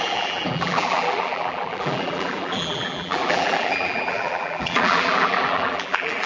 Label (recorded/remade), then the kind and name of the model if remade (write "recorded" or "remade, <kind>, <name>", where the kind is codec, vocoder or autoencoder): remade, vocoder, BigVGAN v2